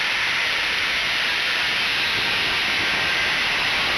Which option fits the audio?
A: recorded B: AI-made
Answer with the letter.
A